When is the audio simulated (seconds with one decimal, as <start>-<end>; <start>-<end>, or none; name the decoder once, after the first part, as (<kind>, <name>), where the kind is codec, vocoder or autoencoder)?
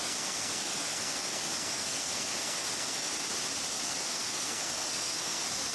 0.0-3.1 (codec, SNAC); 3.7-5.7